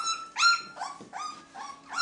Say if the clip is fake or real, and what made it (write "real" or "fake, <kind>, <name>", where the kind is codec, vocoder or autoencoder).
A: real